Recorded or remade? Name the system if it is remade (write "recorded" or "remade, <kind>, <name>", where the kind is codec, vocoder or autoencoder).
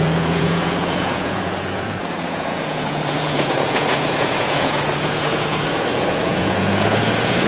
remade, vocoder, Vocos